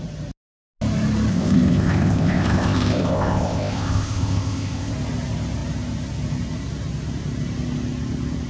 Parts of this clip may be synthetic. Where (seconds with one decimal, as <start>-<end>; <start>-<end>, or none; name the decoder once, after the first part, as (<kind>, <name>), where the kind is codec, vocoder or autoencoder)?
1.3-4.9 (codec, ZipCodec)